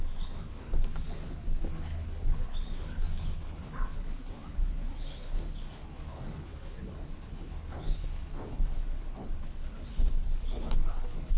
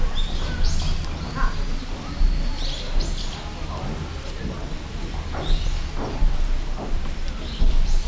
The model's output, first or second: first